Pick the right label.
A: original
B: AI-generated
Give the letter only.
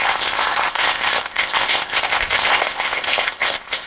B